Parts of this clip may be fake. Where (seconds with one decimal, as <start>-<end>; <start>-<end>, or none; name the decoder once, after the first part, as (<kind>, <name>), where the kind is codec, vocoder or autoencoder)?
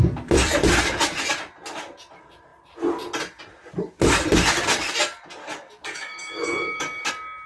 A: 5.4-7.1 (codec, DAC)